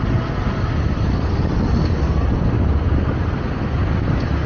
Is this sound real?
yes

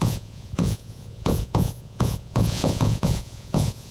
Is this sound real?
no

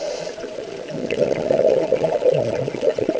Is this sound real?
no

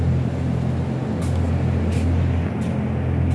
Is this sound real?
yes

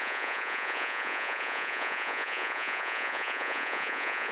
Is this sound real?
no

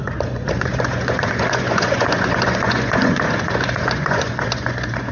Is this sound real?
no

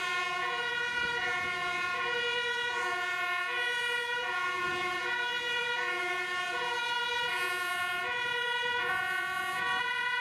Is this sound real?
no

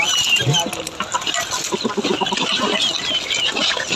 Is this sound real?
yes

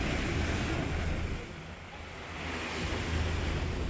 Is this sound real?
yes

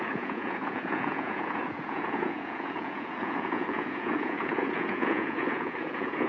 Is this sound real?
no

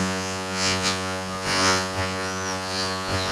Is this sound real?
no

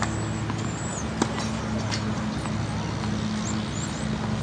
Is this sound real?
yes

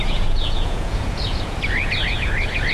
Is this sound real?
no